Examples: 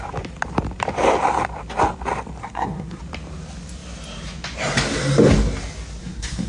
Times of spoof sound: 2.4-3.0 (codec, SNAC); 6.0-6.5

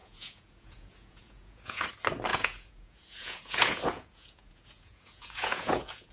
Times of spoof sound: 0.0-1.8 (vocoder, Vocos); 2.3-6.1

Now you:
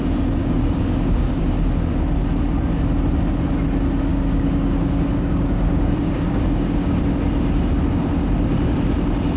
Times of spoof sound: 0.4-1.4 (codec, DAC); 4.1-7.0

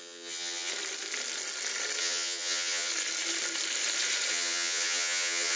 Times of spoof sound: 0.0-0.7 (vocoder, HiFi-GAN); 2.0-2.9; 4.3-5.6